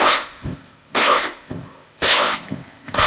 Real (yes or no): no